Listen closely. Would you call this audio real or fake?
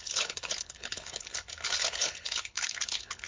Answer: fake